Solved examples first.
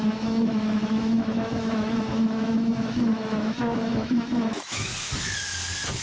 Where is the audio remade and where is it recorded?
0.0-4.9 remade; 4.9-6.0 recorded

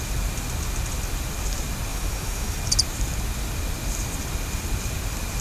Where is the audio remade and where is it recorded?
0.0-1.9 recorded; 1.9-2.6 remade; 2.6-5.4 recorded

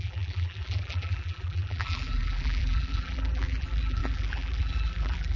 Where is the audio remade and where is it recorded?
0.0-5.4 remade